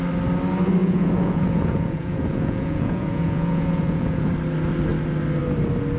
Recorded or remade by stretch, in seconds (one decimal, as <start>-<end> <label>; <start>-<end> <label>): 0.0-0.8 recorded; 0.8-4.3 remade; 4.3-6.0 recorded